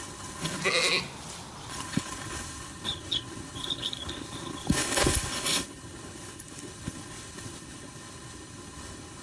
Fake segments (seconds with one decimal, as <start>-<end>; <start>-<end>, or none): 0.0-0.6; 1.7-9.2